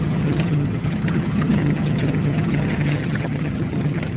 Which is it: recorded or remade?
remade